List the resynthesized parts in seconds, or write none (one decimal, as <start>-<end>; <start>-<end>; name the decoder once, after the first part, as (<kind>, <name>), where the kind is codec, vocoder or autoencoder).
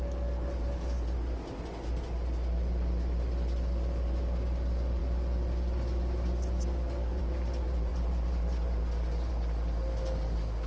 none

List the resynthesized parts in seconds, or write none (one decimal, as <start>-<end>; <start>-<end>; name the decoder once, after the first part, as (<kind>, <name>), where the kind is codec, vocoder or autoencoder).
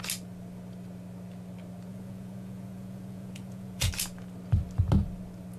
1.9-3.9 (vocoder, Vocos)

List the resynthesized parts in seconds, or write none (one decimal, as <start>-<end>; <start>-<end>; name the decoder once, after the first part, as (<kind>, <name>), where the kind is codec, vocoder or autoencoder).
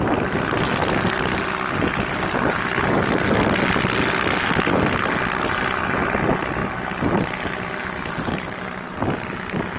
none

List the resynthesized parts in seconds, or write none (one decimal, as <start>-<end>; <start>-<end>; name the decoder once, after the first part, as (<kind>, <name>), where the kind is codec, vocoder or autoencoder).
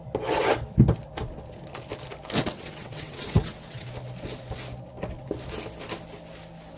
2.4-3.9 (vocoder, WaveNeXt)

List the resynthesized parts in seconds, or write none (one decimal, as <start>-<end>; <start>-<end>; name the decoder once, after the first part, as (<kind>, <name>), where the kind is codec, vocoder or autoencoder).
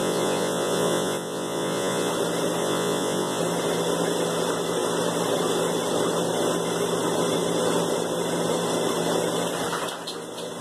0.0-2.1 (vocoder, Vocos); 2.6-3.4